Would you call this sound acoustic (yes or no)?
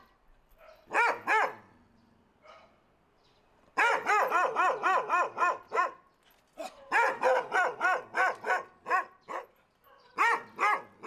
yes